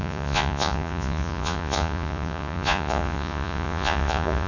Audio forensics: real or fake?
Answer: fake